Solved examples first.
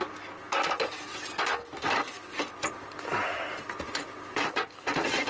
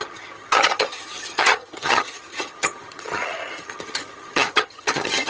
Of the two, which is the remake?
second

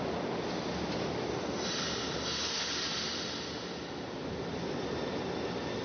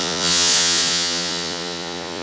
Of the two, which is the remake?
second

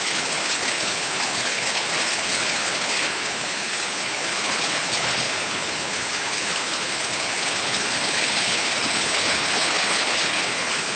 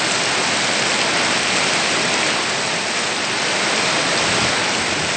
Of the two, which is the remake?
first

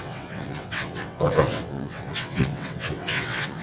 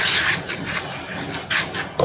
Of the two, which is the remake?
first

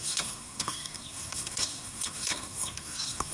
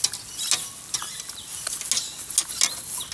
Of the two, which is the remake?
first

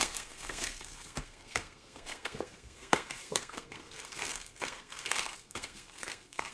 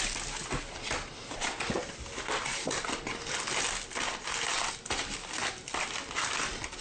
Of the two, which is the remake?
first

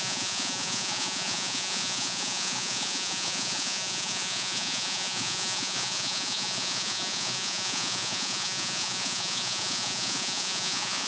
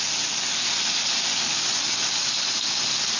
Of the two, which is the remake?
first